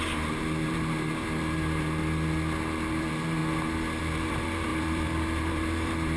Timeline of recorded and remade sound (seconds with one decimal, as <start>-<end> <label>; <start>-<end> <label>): 0.0-2.0 remade; 2.0-2.9 recorded; 2.9-3.4 remade; 3.4-4.0 recorded; 4.0-6.2 remade